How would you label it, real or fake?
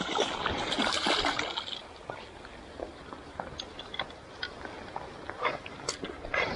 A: real